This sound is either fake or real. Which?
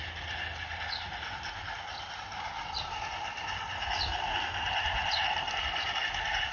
real